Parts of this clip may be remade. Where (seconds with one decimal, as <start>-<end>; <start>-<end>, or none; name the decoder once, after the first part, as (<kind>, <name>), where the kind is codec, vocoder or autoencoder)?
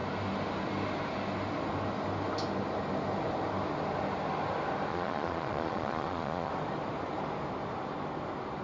4.9-6.5 (vocoder, Vocos)